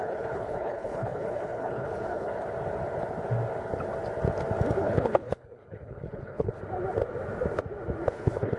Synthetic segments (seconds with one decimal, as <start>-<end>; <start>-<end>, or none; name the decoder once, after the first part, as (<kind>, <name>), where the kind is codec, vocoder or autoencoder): 0.0-2.3 (codec, HILCodec); 4.8-6.6; 8.1-8.6